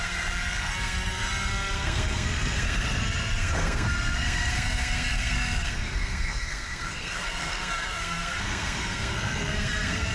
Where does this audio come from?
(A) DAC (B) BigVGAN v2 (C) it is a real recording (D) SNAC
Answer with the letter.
D